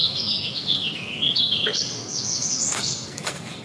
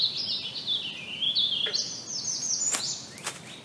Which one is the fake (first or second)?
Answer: first